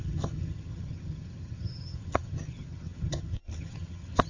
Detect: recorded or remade remade